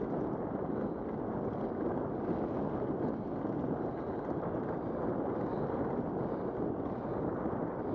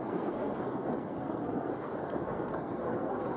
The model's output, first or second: second